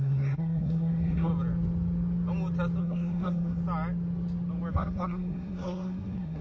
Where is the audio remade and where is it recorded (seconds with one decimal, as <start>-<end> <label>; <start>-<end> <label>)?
0.0-1.3 remade; 1.3-2.8 recorded; 2.8-3.6 remade; 3.6-4.7 recorded; 4.7-6.4 remade